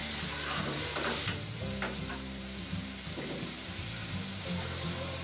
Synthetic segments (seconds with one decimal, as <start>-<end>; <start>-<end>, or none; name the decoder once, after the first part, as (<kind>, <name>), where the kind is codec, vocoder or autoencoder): 0.0-5.2 (vocoder, BigVGAN v2)

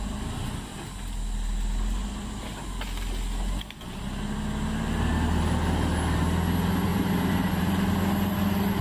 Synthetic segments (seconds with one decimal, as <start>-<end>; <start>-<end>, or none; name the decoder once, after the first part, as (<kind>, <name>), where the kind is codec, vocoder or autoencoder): 6.9-7.5 (vocoder, BigVGAN v2)

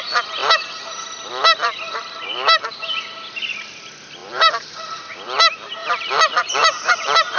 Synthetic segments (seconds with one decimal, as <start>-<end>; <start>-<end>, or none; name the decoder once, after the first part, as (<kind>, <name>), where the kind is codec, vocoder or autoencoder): 4.2-5.0 (vocoder, BigVGAN v2); 5.8-7.4

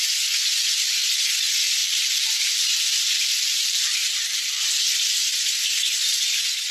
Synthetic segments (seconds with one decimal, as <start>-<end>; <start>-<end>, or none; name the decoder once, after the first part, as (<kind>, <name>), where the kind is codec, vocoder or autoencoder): 1.8-5.2 (vocoder, BigVGAN v2)

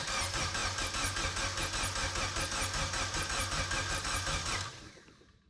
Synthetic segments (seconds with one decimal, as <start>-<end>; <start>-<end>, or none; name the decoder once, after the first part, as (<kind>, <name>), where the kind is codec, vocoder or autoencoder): 0.0-0.6 (vocoder, BigVGAN v2); 3.9-5.5

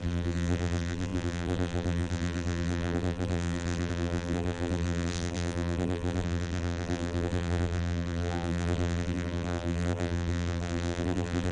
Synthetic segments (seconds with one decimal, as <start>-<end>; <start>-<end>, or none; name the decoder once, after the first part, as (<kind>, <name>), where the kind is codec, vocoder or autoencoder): 0.0-11.5 (vocoder, BigVGAN v2)